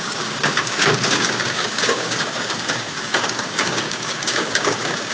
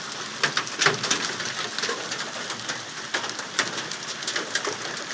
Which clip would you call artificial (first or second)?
first